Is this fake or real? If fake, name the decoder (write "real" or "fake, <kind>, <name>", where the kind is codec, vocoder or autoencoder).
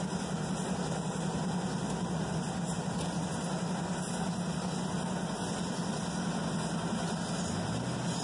real